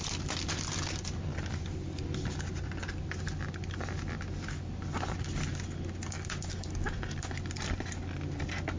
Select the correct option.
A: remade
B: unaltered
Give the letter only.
A